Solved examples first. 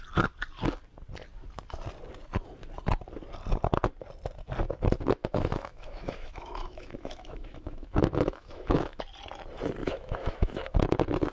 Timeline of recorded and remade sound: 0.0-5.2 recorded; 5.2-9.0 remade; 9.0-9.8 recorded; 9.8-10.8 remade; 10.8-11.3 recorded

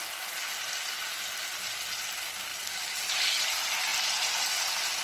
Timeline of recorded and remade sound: 0.0-5.0 recorded